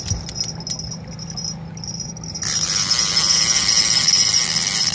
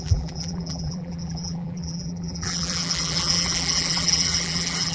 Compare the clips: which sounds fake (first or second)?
second